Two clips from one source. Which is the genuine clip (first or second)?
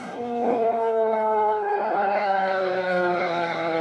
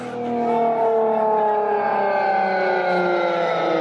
second